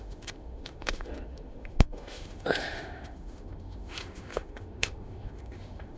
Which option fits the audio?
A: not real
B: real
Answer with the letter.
A